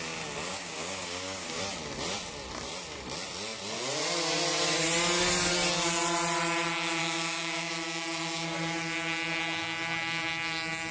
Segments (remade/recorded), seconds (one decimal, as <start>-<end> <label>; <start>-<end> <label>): 0.0-0.5 recorded; 0.5-1.6 remade; 1.6-7.0 recorded; 7.0-7.7 remade; 7.7-10.9 recorded